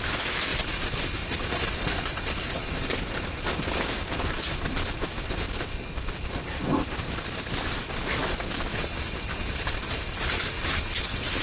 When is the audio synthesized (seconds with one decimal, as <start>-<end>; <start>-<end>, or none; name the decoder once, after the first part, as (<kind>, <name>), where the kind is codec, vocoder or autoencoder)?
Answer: none